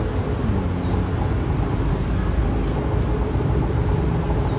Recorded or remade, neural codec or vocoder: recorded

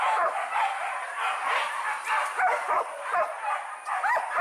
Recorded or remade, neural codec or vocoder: recorded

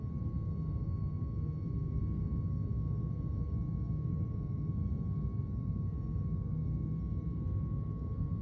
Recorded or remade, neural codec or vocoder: remade, codec, SNAC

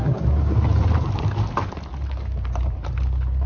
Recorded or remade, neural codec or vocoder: recorded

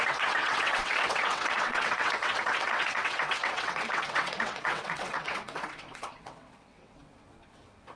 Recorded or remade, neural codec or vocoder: remade, vocoder, WaveNeXt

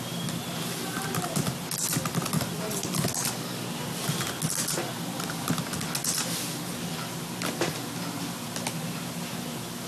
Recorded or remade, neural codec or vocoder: recorded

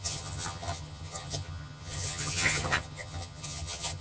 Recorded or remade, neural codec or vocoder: remade, vocoder, HiFi-GAN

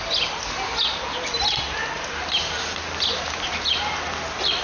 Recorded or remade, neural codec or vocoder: recorded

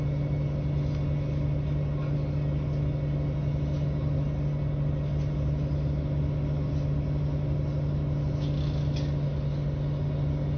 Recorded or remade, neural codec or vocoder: recorded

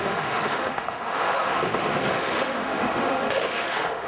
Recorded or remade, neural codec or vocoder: remade, autoencoder, DAC-VAE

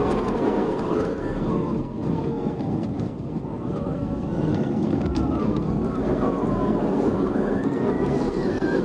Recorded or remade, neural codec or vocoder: remade, codec, SNAC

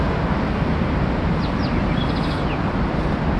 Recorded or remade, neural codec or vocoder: recorded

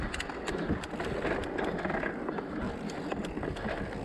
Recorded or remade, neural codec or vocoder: recorded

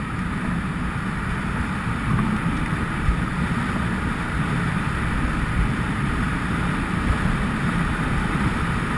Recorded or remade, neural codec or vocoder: remade, vocoder, BigVGAN v2